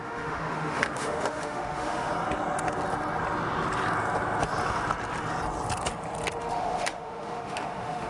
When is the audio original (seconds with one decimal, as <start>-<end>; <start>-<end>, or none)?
2.1-6.4

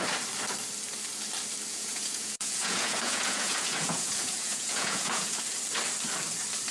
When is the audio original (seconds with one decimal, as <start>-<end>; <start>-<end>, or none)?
0.0-1.7; 5.4-6.7

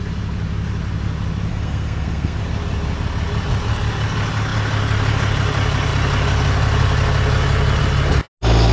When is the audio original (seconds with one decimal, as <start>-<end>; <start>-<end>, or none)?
0.0-1.5; 2.4-8.7

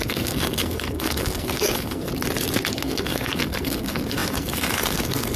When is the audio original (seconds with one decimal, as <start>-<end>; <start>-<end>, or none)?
2.1-2.7

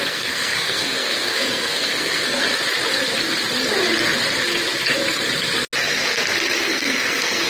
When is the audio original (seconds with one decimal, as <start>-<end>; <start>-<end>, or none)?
2.5-6.6